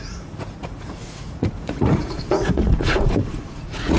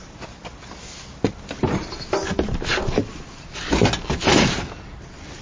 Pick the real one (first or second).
second